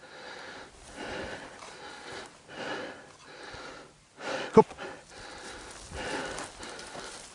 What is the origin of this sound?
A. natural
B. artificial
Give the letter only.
A